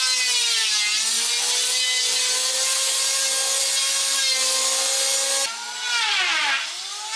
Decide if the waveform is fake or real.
real